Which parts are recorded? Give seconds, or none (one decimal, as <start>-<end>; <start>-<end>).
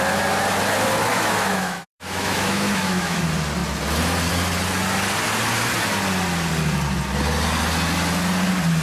0.0-1.1; 3.2-8.8